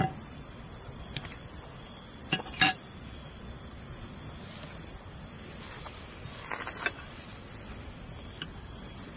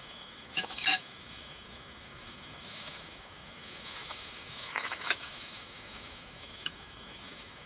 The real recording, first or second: first